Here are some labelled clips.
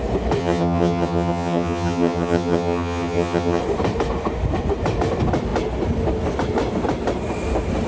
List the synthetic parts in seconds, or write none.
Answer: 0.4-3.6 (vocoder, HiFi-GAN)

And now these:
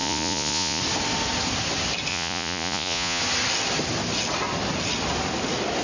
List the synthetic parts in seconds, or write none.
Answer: 0.0-0.8 (vocoder, Vocos); 2.1-3.2